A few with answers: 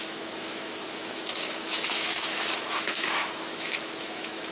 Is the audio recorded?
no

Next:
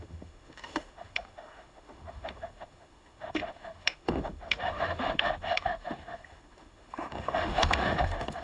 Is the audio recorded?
no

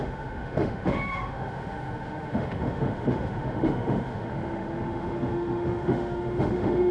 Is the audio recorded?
no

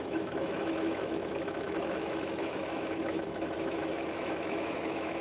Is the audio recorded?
no